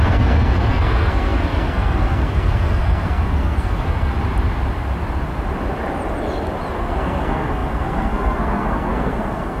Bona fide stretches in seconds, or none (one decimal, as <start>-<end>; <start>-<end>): 4.1-6.8